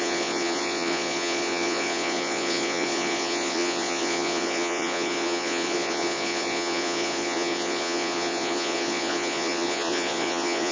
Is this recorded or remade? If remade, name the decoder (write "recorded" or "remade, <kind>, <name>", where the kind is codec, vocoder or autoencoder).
remade, vocoder, Vocos